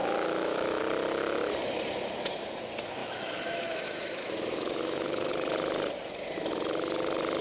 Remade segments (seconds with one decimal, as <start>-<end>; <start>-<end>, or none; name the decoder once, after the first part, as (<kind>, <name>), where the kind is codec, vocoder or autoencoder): 0.0-0.8 (autoencoder, DAC-VAE); 3.0-5.3